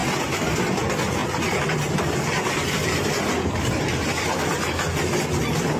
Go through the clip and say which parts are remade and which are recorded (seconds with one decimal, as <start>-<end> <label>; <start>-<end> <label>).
0.0-0.6 remade; 0.6-1.2 recorded; 1.2-4.3 remade; 4.3-5.8 recorded